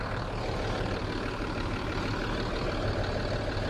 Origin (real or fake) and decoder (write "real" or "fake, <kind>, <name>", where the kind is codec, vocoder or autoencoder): real